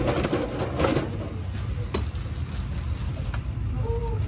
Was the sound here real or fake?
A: real